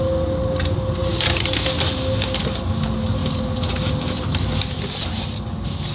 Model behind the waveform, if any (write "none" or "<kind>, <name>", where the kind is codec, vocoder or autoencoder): none